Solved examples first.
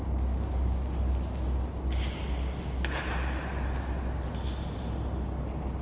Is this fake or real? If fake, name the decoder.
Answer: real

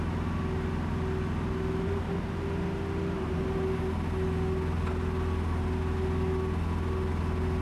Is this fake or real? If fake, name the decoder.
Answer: real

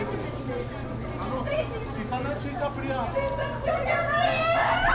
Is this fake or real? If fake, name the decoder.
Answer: real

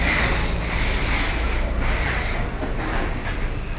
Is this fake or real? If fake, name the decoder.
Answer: real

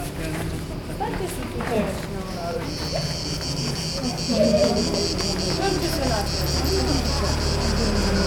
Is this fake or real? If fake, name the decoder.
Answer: real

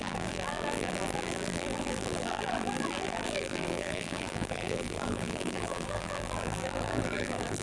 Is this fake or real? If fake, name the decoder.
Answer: fake, vocoder, BigVGAN v2